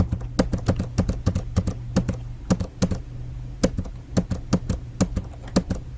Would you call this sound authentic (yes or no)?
yes